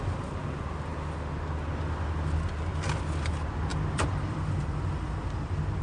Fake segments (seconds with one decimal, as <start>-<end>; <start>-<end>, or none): 3.7-5.8